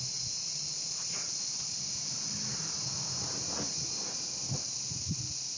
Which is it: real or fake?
real